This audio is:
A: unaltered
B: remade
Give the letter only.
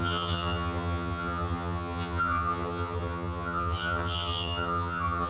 B